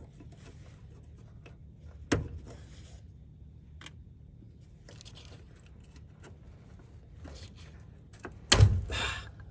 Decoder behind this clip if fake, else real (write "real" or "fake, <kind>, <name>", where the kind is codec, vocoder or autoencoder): real